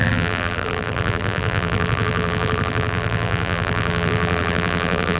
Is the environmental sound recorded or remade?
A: remade